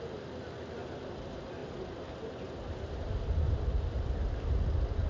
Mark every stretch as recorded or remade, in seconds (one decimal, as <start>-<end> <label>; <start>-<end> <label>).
0.0-5.1 recorded